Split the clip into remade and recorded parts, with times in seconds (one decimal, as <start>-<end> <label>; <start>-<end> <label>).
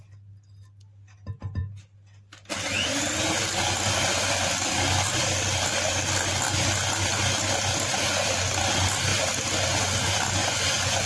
0.0-10.4 recorded; 10.4-11.1 remade